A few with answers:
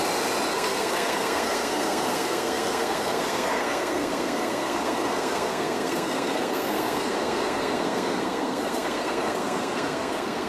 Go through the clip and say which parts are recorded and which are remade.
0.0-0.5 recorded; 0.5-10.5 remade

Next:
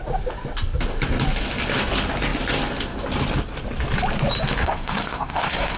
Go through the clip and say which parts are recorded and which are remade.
0.0-4.6 recorded; 4.6-5.8 remade

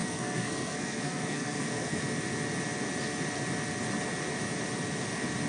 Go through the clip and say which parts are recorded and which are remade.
0.0-2.0 remade; 2.0-5.5 recorded